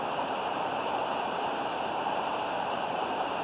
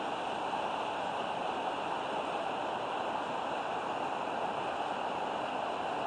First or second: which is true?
second